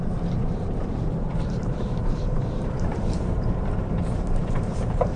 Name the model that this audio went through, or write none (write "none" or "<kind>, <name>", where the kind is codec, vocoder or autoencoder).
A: vocoder, BigVGAN v2